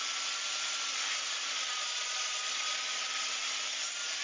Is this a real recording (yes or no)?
yes